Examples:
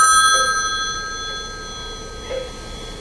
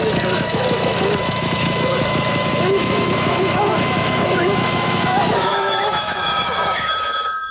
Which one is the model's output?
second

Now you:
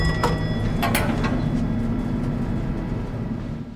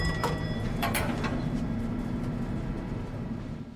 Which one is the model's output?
second